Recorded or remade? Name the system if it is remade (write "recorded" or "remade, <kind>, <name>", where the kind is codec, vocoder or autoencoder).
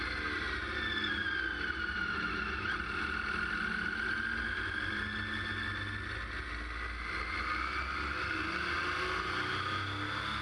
recorded